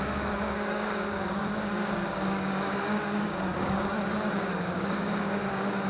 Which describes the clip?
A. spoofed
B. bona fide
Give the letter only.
A